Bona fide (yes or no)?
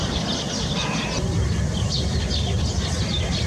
yes